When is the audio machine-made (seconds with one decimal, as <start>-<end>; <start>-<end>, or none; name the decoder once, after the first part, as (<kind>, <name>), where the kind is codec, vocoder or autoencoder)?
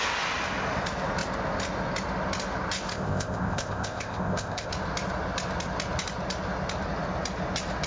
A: 2.9-4.7 (codec, ZipCodec)